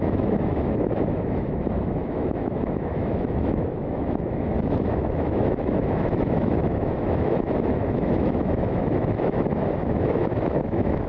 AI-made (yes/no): yes